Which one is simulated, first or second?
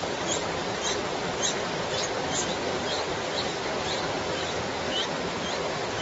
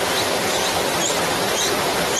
first